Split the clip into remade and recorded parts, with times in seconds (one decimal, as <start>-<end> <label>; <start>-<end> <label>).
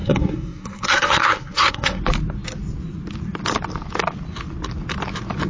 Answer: 0.0-2.0 remade; 2.0-5.5 recorded